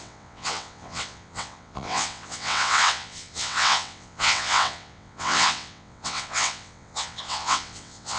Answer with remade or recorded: remade